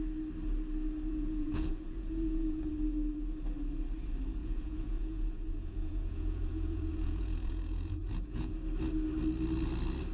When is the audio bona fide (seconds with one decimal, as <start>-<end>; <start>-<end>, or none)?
0.0-1.1; 2.7-4.4; 8.5-10.1